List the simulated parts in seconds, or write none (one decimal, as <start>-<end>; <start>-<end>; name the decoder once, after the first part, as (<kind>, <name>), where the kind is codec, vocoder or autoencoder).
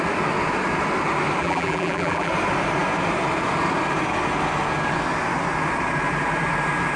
1.4-2.3 (vocoder, BigVGAN v2)